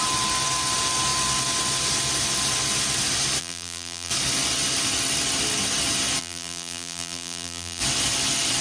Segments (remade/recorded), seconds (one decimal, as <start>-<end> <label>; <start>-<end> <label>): 0.0-3.4 recorded; 3.4-4.1 remade; 4.1-6.2 recorded; 6.2-7.8 remade; 7.8-8.6 recorded